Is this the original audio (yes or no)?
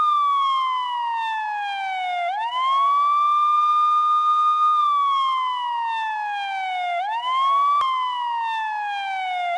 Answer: yes